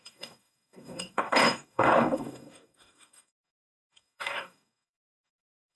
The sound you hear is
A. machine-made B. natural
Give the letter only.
A